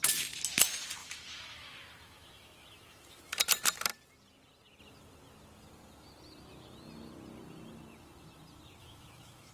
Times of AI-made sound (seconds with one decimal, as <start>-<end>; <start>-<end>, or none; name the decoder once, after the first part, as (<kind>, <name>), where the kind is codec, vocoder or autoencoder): 1.0-3.2 (autoencoder, DAC-VAE); 8.8-9.5